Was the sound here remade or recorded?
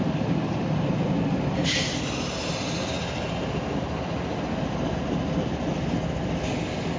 recorded